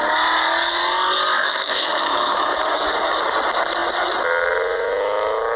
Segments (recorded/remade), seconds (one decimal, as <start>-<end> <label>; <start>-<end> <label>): 0.0-1.3 recorded; 1.3-2.6 remade; 2.6-5.6 recorded